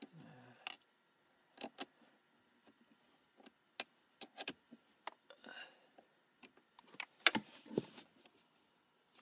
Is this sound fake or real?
real